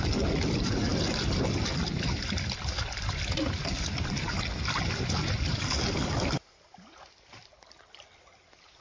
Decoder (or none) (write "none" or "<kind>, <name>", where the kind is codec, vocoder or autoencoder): none